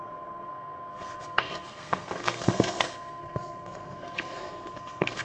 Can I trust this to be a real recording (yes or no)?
no